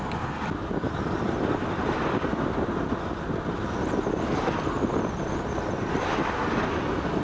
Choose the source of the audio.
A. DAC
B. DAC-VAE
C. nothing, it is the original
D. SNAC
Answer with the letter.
C